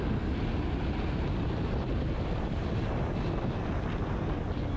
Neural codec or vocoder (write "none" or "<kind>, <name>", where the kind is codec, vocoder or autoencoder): none